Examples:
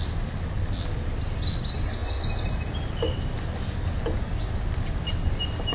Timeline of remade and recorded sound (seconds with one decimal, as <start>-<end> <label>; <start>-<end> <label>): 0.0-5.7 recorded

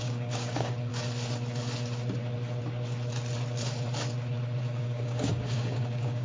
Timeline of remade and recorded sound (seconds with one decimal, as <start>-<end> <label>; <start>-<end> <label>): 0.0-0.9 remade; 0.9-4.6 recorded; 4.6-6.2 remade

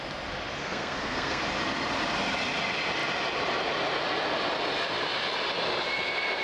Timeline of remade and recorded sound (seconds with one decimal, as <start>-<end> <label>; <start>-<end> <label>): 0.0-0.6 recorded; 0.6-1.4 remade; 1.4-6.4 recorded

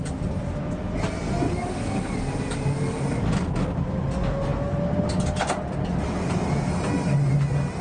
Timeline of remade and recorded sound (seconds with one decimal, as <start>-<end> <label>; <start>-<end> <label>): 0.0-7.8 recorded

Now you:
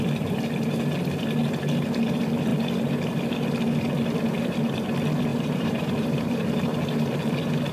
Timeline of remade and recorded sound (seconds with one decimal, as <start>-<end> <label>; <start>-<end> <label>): 0.0-5.3 recorded; 5.3-7.1 remade; 7.1-7.7 recorded